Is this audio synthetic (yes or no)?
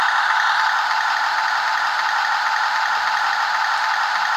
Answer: no